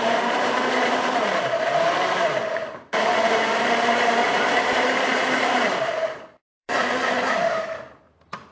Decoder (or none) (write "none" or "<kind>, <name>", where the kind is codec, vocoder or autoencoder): vocoder, BigVGAN v2